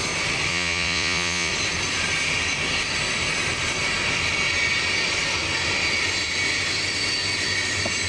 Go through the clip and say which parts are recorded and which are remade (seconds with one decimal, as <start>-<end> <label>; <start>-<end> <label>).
0.0-0.5 recorded; 0.5-1.5 remade; 1.5-8.1 recorded